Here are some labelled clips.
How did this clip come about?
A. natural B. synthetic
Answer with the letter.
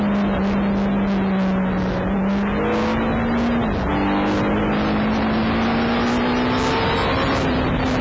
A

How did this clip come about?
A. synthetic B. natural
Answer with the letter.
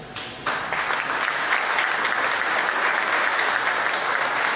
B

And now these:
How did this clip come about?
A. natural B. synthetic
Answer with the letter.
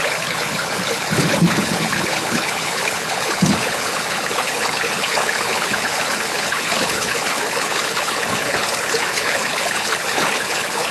B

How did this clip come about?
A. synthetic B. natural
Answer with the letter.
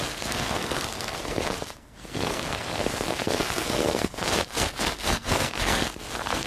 A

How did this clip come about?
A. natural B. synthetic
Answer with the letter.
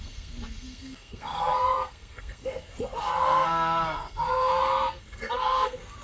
B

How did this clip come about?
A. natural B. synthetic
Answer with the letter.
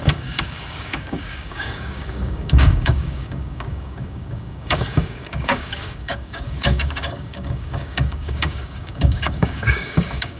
B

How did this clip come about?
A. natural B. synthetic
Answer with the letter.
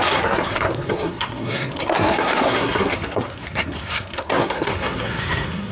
B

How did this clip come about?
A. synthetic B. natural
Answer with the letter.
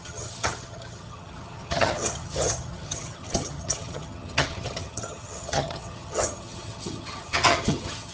A